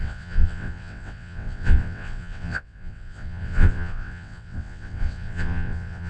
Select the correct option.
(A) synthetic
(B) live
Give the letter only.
A